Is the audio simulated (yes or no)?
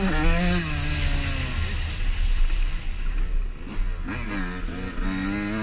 no